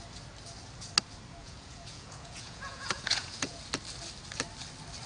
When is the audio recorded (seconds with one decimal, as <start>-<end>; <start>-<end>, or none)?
0.0-1.4; 3.6-5.1